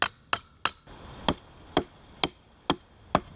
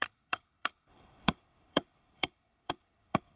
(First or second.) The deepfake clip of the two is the second